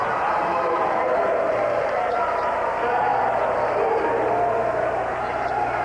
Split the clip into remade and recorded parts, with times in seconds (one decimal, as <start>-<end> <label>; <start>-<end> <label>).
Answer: 0.0-5.8 recorded